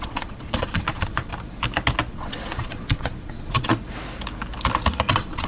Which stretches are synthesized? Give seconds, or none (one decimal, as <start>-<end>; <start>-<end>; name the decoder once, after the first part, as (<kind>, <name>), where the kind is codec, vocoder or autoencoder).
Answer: 0.0-1.3 (vocoder, Vocos); 2.1-3.7; 5.1-5.5